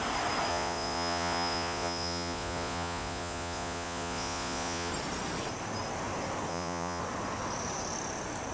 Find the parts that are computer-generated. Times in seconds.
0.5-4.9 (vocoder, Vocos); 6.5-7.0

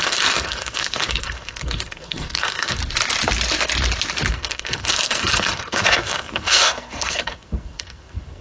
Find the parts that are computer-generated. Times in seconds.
0.0-2.8 (codec, SNAC); 4.3-8.4